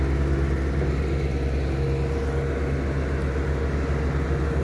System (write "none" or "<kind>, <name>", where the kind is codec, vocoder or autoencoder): none